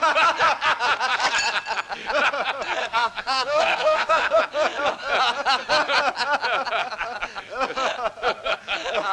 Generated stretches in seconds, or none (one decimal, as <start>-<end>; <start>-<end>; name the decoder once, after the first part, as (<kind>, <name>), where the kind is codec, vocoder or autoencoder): 2.8-4.4 (codec, SNAC)

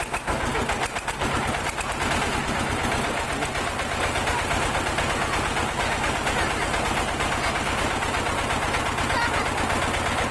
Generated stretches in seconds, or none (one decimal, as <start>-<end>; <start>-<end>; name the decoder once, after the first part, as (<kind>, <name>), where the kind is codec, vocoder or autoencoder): none

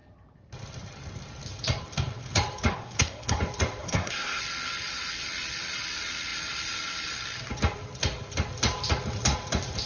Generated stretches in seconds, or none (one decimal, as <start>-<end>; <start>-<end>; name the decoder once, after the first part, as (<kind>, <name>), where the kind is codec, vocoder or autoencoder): 2.7-3.4 (codec, SNAC); 3.8-4.4

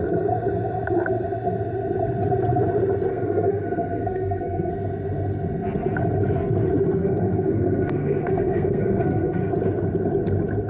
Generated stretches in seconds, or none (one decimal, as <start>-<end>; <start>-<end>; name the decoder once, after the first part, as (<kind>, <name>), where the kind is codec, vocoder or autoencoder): 3.1-4.7 (codec, SNAC); 7.0-9.5

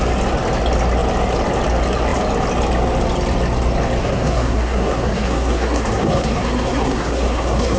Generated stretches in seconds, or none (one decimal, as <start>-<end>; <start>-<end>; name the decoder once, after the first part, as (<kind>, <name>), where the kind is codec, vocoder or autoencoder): 4.0-7.8 (codec, SNAC)

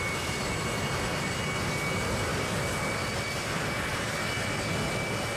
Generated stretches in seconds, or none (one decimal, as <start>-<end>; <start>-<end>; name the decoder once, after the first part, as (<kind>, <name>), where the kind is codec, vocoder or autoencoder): none

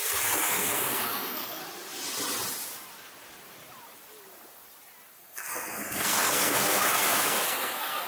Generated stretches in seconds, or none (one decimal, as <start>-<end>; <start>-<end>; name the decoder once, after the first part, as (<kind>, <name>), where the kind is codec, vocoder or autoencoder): 0.0-1.6 (codec, SNAC); 5.2-8.1